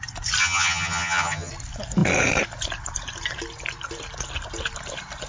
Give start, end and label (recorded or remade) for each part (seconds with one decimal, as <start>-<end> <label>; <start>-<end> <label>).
0.0-0.4 recorded; 0.4-1.5 remade; 1.5-5.3 recorded